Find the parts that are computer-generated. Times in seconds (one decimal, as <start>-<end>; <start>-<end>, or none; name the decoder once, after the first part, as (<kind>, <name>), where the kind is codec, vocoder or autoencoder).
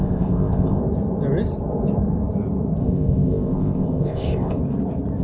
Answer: 0.0-0.8 (codec, ZipCodec); 2.8-4.6